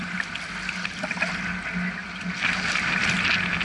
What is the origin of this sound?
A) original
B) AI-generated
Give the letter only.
A